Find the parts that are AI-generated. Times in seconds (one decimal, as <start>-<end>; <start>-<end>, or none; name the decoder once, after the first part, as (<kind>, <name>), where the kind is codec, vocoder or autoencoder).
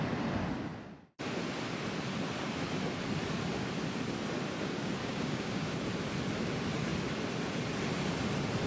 5.0-5.8 (codec, DAC)